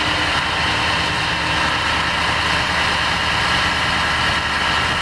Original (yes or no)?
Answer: yes